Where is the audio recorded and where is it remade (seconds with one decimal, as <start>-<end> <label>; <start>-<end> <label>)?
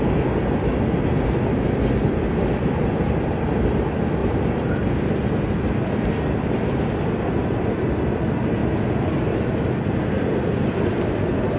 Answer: 0.0-4.2 recorded; 4.2-4.7 remade; 4.7-11.6 recorded